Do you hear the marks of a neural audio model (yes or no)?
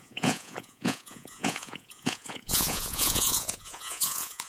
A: yes